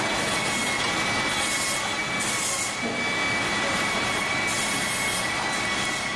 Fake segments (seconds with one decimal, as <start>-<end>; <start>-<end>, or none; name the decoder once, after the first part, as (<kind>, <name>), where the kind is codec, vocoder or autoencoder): none